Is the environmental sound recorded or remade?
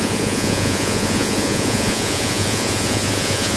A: remade